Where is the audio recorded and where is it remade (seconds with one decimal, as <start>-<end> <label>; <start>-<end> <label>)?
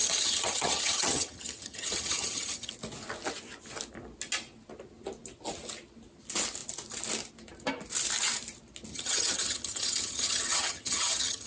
0.0-2.7 remade; 2.7-8.9 recorded; 8.9-11.5 remade